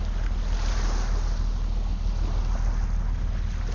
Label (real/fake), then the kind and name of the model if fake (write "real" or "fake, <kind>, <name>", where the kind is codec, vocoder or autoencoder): real